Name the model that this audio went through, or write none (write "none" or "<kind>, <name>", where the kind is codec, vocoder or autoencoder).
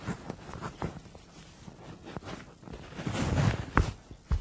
none